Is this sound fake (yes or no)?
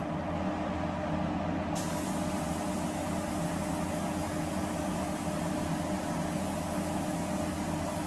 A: no